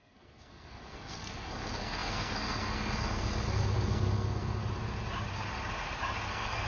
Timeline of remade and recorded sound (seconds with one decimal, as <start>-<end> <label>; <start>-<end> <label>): 0.0-4.6 remade; 4.6-6.3 recorded; 6.3-6.7 remade